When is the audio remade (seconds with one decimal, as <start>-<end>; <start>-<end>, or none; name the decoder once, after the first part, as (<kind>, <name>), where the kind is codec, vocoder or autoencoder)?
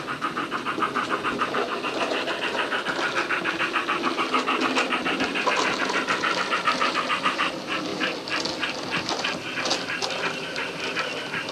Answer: none